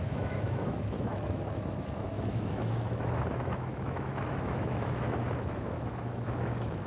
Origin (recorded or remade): remade